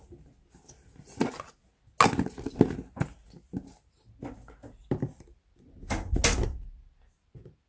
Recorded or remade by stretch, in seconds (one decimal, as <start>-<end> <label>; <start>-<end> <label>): 0.0-7.7 recorded